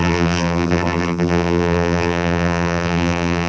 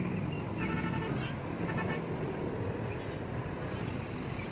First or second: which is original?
second